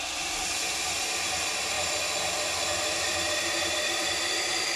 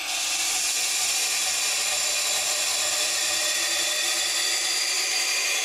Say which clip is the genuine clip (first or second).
second